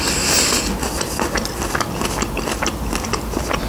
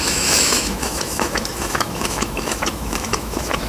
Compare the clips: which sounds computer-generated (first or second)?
second